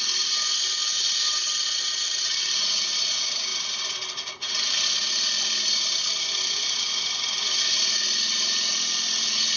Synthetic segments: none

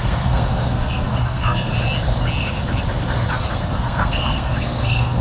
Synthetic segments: 0.0-1.7 (codec, SNAC); 3.5-5.2

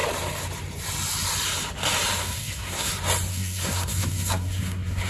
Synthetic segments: 2.2-2.9 (codec, SNAC); 3.3-5.1

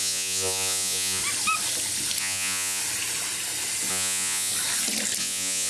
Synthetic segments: 0.0-1.2 (vocoder, Vocos); 2.2-2.8; 3.9-4.5; 5.2-5.7

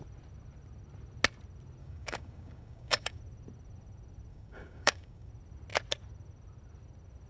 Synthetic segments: 1.8-3.2 (codec, DAC); 4.3-5.3

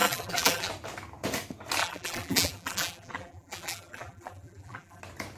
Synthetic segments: 0.0-0.7 (vocoder, BigVGAN v2); 1.8-5.0

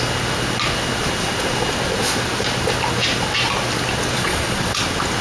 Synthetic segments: 4.1-4.8 (vocoder, Vocos)

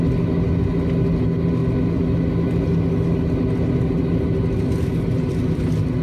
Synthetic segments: none